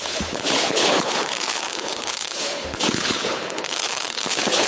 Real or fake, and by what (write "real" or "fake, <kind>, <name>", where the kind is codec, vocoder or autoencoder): fake, codec, HILCodec